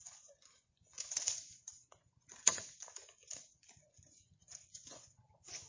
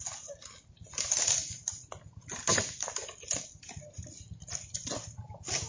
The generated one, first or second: first